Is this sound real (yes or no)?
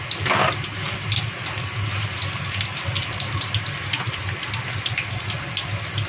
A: yes